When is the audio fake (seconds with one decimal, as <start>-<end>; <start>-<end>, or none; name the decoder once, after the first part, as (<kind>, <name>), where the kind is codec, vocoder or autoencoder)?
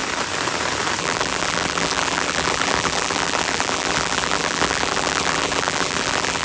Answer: 1.0-6.4 (vocoder, BigVGAN v2)